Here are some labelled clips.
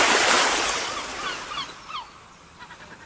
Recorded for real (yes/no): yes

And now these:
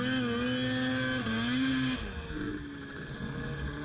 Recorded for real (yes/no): yes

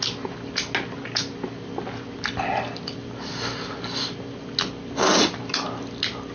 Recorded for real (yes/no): yes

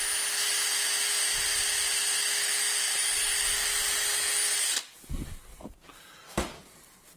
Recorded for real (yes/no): yes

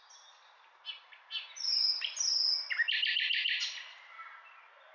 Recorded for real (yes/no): yes